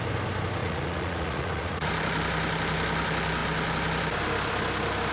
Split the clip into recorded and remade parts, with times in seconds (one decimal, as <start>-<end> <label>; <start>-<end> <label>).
0.0-0.6 recorded; 0.6-1.9 remade; 1.9-5.1 recorded